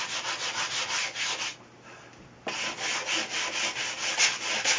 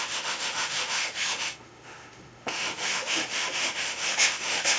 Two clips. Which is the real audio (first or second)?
first